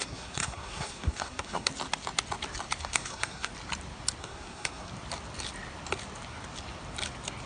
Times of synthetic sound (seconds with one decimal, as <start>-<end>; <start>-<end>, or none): 0.0-1.7; 2.8-3.5; 4.2-4.9